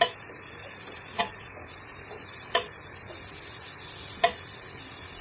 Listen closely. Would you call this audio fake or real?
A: real